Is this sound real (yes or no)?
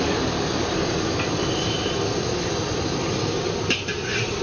yes